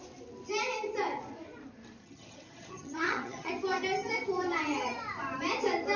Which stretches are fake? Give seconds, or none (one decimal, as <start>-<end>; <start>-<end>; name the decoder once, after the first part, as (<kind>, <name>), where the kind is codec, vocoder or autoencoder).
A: 2.0-3.5 (vocoder, HiFi-GAN)